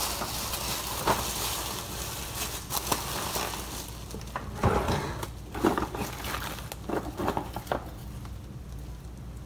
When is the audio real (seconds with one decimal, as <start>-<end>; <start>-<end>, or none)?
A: 0.0-9.5